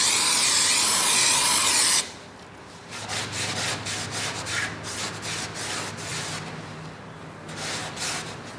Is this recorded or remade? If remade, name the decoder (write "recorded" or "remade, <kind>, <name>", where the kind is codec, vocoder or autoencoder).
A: recorded